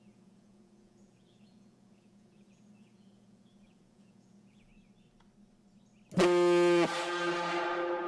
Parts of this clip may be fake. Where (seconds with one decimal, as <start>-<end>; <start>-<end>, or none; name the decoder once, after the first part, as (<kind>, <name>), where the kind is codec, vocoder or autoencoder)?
0.0-4.7 (vocoder, Vocos)